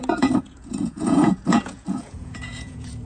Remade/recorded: remade